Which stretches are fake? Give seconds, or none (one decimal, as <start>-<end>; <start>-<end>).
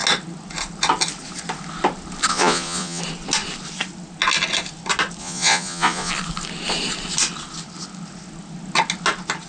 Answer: 2.3-3.0; 5.2-6.1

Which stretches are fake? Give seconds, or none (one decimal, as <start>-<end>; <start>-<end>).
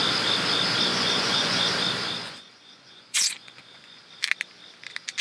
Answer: 0.9-1.7; 2.2-4.0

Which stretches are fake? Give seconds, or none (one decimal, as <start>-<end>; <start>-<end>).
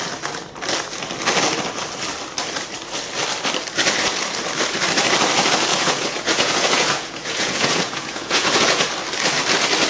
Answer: 5.7-8.9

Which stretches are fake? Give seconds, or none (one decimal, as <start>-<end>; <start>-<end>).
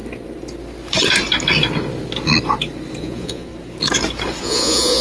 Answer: 3.0-3.5; 4.4-5.0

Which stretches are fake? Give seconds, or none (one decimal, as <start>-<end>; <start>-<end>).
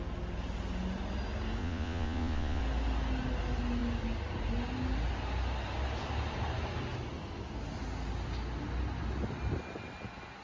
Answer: 1.6-2.6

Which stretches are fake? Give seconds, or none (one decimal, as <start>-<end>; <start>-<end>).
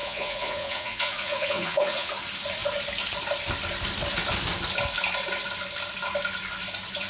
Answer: 0.0-2.1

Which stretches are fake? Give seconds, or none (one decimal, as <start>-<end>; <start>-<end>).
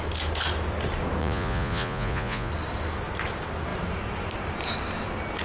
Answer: 1.2-2.5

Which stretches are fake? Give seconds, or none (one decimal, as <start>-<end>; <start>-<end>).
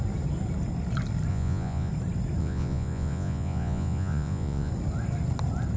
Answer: 1.3-1.9; 2.4-4.7